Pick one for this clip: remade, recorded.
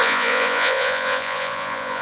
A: remade